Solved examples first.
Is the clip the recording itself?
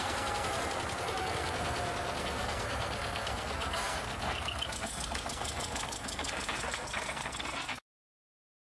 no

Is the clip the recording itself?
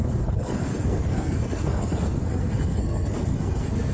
no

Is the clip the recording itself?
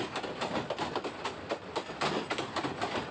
yes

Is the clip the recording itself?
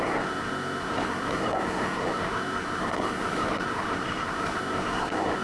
no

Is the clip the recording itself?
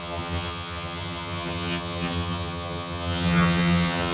no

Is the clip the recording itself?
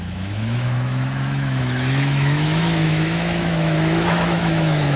no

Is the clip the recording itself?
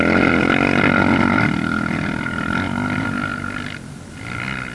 yes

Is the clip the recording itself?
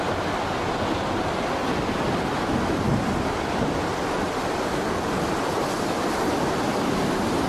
yes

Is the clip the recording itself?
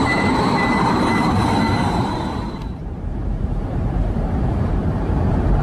no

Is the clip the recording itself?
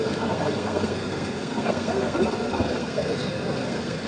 no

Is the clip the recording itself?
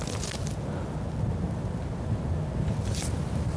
yes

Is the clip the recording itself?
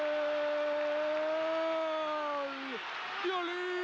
yes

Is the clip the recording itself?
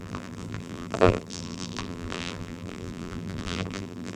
no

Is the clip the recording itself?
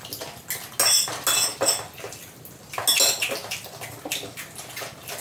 yes